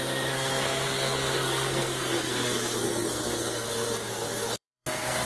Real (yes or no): no